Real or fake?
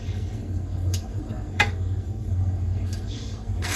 fake